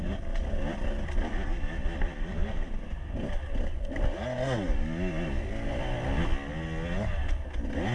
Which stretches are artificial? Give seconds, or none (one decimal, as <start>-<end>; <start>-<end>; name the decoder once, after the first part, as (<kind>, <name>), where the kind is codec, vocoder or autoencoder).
2.4-3.3 (vocoder, BigVGAN v2)